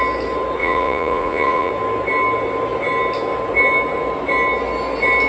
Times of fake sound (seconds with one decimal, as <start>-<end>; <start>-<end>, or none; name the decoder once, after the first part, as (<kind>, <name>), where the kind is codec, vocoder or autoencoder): 0.6-1.7 (vocoder, Vocos)